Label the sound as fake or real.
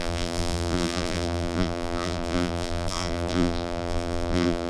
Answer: fake